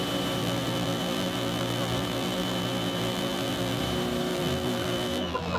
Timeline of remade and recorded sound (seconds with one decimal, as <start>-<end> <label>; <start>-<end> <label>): 0.0-0.4 recorded; 0.4-3.8 remade; 3.8-4.3 recorded; 4.3-5.6 remade